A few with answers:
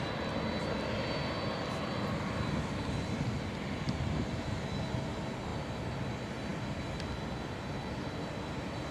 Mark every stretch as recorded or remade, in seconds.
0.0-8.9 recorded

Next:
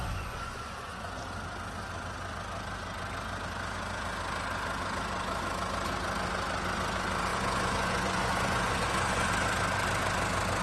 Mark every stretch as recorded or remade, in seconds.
0.0-1.2 remade; 1.2-7.3 recorded; 7.3-9.3 remade; 9.3-10.6 recorded